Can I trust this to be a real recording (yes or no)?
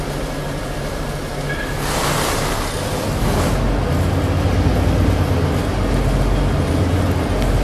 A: yes